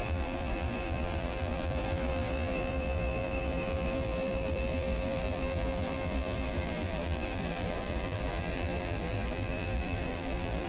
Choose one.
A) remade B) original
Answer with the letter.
A